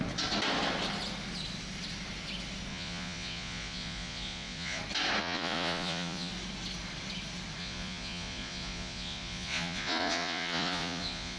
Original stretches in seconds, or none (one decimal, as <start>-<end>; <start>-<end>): 0.0-2.7; 4.8-5.2; 6.3-7.6